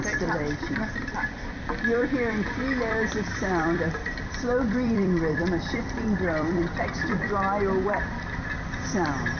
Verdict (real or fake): fake